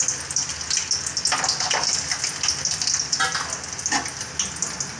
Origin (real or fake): real